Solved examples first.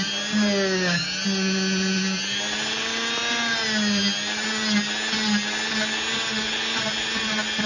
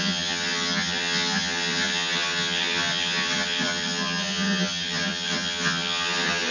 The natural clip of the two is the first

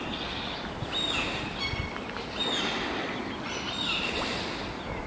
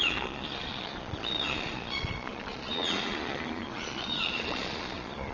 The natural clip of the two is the first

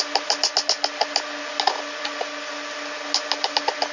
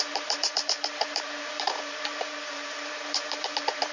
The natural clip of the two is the first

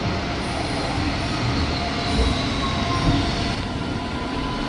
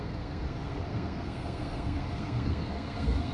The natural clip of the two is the first